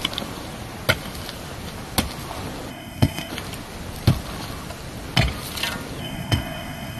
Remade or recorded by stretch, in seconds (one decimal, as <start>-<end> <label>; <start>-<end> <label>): 0.0-2.7 recorded; 2.7-3.3 remade; 3.3-6.0 recorded; 6.0-7.0 remade